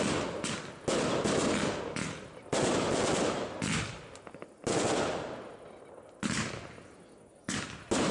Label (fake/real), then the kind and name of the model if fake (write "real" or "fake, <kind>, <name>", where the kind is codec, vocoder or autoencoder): real